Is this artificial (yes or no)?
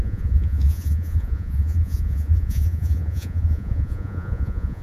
yes